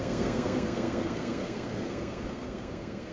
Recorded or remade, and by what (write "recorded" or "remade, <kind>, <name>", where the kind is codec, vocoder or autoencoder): remade, codec, SNAC